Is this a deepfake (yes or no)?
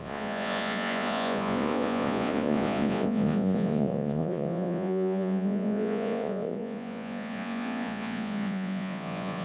yes